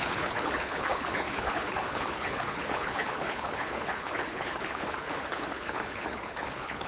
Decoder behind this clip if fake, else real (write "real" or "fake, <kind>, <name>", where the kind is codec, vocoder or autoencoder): fake, codec, HILCodec